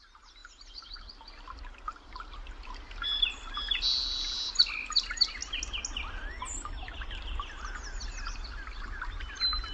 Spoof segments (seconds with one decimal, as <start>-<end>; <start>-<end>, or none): none